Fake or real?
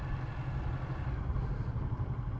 real